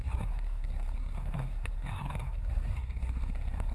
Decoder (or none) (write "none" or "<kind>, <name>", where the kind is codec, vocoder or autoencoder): codec, SNAC